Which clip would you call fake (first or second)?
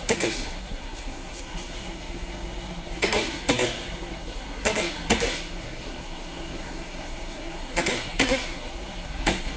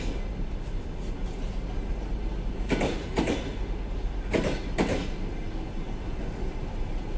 first